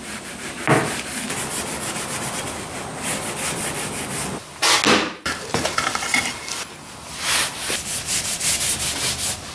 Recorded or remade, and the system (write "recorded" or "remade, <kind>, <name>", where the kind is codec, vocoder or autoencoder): recorded